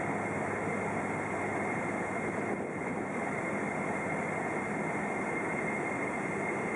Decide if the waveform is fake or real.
fake